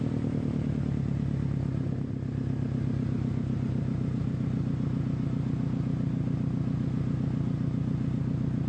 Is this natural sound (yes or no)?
yes